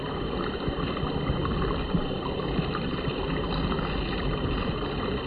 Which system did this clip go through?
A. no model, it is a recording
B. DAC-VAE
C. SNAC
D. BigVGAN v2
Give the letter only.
A